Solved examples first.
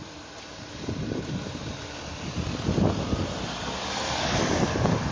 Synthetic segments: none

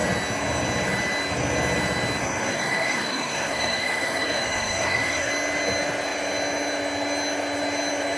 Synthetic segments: 2.2-5.3

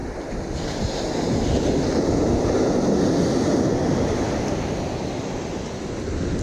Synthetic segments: none

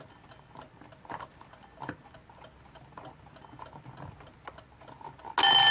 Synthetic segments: none